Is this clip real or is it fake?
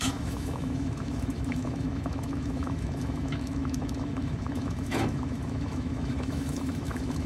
fake